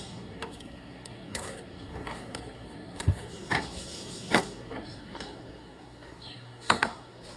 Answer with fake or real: fake